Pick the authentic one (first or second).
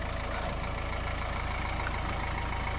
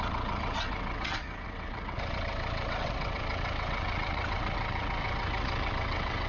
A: first